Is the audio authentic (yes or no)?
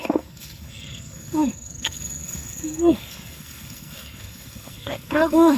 no